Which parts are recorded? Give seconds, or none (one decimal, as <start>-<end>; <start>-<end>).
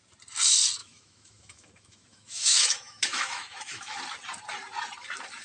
0.0-0.8; 4.0-5.4